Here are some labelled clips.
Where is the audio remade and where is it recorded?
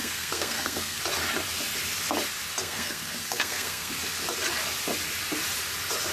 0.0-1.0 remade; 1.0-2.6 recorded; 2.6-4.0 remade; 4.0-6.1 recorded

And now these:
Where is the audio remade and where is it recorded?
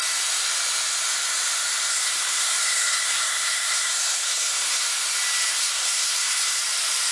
0.0-1.9 recorded; 1.9-4.9 remade; 4.9-5.5 recorded; 5.5-6.6 remade; 6.6-7.1 recorded